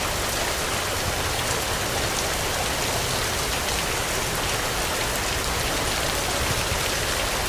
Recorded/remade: recorded